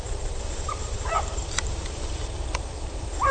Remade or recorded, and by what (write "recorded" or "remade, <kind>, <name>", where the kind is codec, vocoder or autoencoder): remade, vocoder, BigVGAN v2